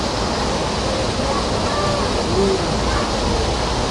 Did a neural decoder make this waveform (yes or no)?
no